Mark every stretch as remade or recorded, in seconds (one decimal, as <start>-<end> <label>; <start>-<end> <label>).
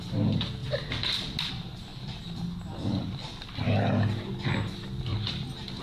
0.0-1.9 recorded; 1.9-2.4 remade; 2.4-5.1 recorded; 5.1-5.8 remade